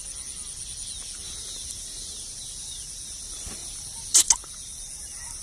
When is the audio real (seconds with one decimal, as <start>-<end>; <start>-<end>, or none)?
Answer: 0.0-5.4